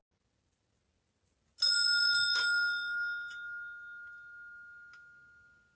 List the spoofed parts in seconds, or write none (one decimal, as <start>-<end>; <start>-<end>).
none